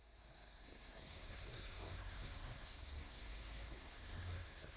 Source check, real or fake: fake